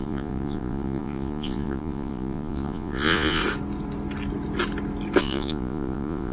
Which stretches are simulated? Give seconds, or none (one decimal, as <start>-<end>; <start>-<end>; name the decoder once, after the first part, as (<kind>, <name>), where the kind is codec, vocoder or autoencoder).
0.0-3.4 (vocoder, Vocos); 5.2-6.3